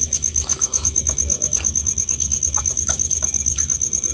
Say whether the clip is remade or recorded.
remade